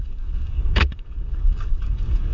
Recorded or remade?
remade